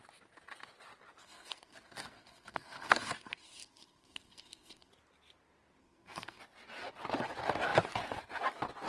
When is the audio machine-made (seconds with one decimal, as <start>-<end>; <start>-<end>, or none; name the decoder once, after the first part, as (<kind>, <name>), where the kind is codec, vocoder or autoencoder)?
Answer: 1.2-4.9 (codec, SNAC); 5.8-6.4